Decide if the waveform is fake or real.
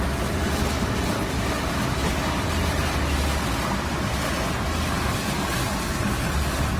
real